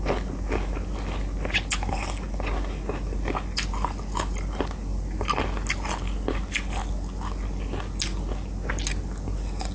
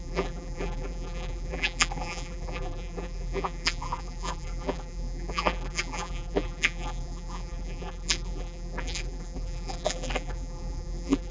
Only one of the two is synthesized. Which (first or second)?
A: second